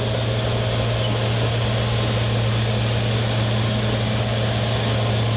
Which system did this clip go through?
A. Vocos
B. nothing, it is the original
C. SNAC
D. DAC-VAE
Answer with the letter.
B